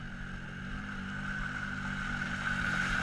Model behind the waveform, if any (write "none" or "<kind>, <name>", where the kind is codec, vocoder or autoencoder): none